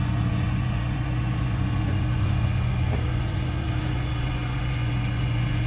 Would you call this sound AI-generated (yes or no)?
yes